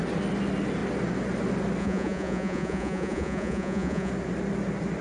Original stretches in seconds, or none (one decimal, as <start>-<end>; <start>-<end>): 0.0-1.8; 4.1-5.0